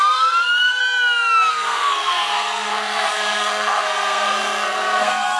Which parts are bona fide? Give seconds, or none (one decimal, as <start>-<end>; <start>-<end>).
0.8-1.5